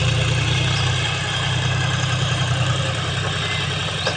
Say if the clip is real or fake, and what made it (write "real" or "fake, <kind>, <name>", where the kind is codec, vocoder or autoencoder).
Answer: fake, vocoder, BigVGAN v2